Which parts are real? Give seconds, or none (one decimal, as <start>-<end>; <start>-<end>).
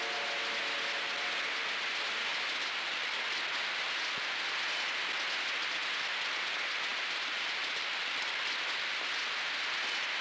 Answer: 0.0-10.2